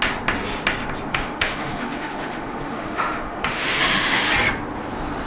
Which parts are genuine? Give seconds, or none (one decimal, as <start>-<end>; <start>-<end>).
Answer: 0.0-1.1; 4.3-5.3